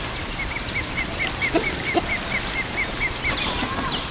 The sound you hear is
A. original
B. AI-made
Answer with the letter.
A